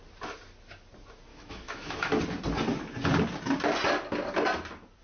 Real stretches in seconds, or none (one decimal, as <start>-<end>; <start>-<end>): 0.0-1.3; 2.1-5.0